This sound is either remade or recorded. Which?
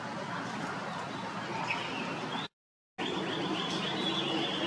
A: recorded